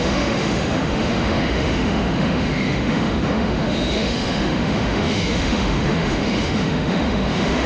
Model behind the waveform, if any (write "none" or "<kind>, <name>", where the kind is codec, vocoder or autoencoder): autoencoder, DAC-VAE